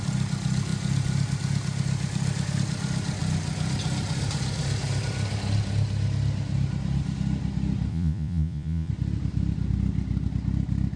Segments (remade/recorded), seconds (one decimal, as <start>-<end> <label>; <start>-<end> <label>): 0.0-7.9 recorded; 7.9-8.9 remade; 8.9-11.0 recorded